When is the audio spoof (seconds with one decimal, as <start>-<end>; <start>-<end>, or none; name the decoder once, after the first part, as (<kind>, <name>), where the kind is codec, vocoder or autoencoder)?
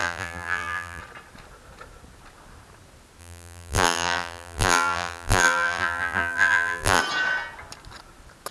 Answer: 0.0-1.0 (vocoder, BigVGAN v2); 3.2-7.0